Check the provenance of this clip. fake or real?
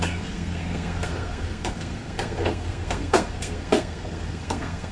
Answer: fake